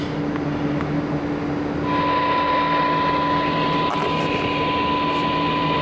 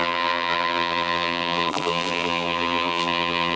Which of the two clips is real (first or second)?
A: first